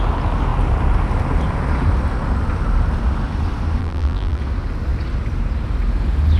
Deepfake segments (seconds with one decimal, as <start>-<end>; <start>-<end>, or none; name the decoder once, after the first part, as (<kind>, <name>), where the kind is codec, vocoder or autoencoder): 3.8-4.4 (vocoder, BigVGAN v2)